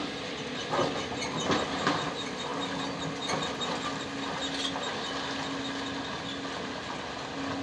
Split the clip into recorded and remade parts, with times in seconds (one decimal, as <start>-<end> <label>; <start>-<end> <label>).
0.0-7.6 recorded